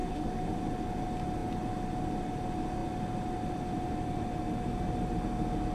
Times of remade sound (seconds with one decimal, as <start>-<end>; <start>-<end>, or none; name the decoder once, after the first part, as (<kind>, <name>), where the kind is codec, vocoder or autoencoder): 0.0-0.6 (autoencoder, DAC-VAE)

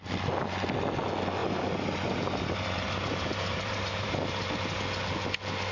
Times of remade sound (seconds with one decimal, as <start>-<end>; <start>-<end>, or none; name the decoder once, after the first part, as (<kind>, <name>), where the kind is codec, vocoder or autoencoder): 1.4-4.8 (vocoder, BigVGAN v2)

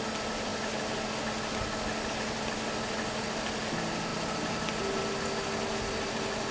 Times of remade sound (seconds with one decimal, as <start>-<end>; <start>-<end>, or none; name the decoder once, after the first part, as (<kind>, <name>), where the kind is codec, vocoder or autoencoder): none

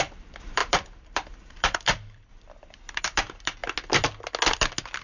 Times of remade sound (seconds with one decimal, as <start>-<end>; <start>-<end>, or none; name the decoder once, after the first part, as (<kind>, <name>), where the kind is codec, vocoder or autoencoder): 0.0-3.6 (vocoder, BigVGAN v2)

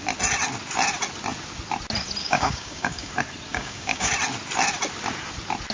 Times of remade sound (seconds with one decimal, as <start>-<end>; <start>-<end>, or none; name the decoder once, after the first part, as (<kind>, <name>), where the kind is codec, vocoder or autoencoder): 2.2-3.1 (codec, DAC); 3.5-4.1